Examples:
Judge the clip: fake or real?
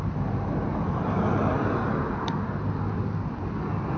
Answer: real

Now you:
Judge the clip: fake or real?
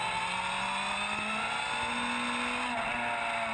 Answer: real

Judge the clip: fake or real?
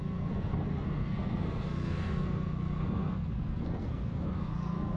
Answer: fake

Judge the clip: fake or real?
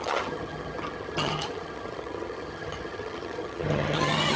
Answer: fake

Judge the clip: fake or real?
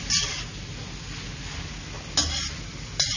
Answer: real